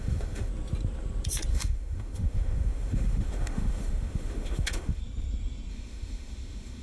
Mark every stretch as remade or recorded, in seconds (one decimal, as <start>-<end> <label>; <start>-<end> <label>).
0.0-0.5 remade; 0.5-1.5 recorded; 1.5-5.0 remade; 5.0-5.7 recorded; 5.7-6.8 remade